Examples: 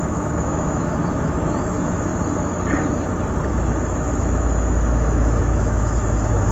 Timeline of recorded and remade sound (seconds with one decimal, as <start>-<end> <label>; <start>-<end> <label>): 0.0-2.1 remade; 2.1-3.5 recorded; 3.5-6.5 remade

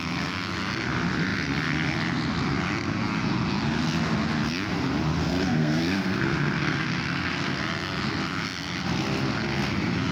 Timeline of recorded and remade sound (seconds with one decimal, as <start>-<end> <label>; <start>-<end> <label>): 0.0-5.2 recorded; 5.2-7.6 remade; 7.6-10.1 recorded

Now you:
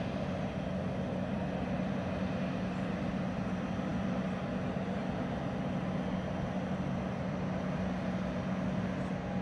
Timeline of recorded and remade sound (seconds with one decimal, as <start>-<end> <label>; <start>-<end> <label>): 0.0-9.4 recorded

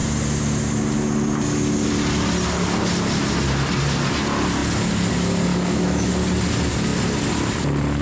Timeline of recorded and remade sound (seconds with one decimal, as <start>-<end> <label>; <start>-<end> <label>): 0.0-5.5 recorded; 5.5-6.1 remade; 6.1-8.0 recorded

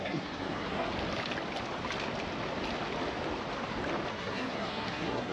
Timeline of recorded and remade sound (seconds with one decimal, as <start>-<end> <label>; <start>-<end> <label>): 0.0-0.9 remade; 0.9-4.1 recorded; 4.1-5.3 remade

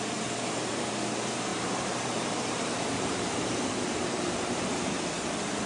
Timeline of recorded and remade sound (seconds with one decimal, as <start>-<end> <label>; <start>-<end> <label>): 0.0-1.5 recorded; 1.5-4.9 remade; 4.9-5.7 recorded